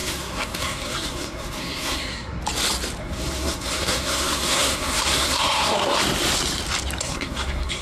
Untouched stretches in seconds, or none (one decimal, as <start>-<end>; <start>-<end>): 2.4-3.0; 5.9-7.0